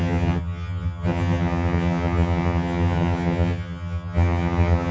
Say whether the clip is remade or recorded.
remade